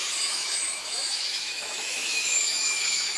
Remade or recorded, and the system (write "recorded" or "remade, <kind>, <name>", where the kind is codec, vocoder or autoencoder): remade, autoencoder, DAC-VAE